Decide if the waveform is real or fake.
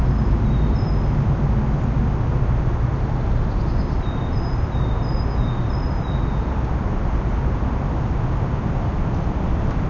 real